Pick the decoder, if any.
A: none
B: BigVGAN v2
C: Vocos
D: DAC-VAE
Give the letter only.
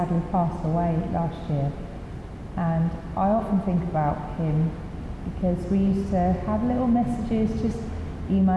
A